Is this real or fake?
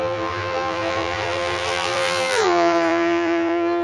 fake